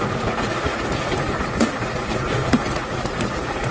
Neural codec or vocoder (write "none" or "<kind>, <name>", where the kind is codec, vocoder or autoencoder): vocoder, Vocos